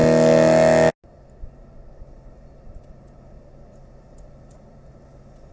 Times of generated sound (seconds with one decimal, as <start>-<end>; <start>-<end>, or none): 1.4-5.5